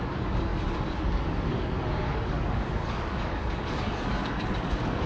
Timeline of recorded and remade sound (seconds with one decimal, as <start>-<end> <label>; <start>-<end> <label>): 0.0-5.1 remade